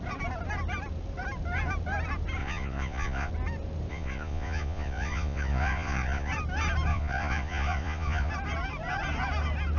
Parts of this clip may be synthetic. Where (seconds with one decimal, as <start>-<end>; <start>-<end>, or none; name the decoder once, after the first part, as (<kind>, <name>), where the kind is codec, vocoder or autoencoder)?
2.4-3.3 (vocoder, Vocos); 3.9-6.3; 6.9-8.3